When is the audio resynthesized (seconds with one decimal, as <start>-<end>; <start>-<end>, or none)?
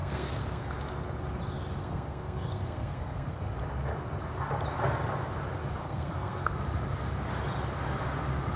0.0-0.7; 1.8-3.4; 5.8-6.5